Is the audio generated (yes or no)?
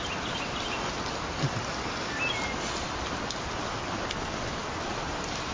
no